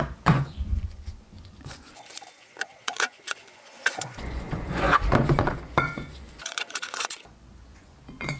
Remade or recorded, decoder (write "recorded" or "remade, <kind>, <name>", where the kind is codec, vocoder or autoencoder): remade, vocoder, Vocos